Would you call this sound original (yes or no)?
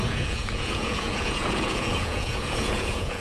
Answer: no